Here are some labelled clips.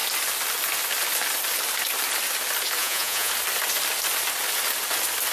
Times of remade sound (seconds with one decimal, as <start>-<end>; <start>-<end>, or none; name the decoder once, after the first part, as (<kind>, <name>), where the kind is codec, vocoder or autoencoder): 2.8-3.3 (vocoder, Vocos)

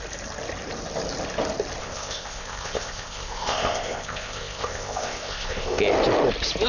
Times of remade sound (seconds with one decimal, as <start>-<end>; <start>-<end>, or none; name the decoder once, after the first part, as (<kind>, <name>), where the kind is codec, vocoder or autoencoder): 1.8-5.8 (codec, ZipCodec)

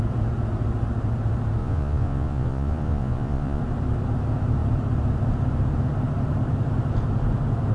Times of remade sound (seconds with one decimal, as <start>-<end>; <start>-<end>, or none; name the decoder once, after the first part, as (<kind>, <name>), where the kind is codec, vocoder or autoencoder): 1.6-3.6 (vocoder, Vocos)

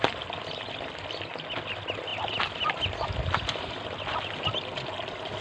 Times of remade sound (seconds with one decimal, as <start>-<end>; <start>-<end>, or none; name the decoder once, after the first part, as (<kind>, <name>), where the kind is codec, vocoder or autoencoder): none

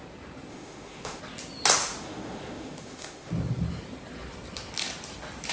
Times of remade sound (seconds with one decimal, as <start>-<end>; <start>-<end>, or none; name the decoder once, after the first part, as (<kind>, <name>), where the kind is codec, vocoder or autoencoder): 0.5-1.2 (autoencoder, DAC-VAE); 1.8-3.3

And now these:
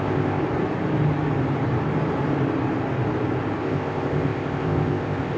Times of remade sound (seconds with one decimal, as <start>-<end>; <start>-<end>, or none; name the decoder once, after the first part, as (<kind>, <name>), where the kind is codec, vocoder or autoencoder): 0.0-0.4 (codec, ZipCodec); 3.6-5.4

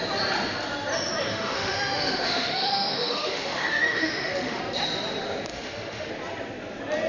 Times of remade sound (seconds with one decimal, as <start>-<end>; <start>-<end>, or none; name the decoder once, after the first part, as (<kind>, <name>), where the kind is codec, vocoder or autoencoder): 1.3-4.6 (autoencoder, DAC-VAE); 5.5-6.1

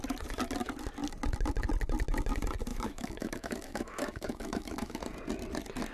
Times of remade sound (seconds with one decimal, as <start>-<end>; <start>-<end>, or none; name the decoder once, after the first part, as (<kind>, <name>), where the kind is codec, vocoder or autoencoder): 2.7-5.0 (autoencoder, DAC-VAE)